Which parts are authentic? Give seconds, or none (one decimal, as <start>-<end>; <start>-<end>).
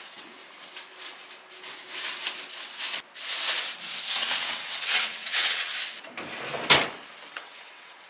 0.4-4.1; 5.7-7.3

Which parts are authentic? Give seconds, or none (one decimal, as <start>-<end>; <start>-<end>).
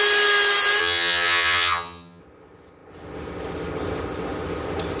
0.0-0.8; 2.2-5.0